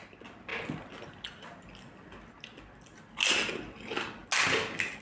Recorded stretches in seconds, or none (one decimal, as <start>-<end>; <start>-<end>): 0.0-5.0